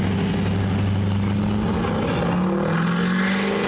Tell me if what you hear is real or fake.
real